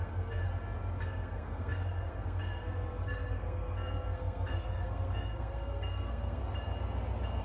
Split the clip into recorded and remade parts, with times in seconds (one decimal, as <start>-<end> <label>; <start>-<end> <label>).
0.0-0.5 remade; 0.5-1.0 recorded; 1.0-6.4 remade; 6.4-7.4 recorded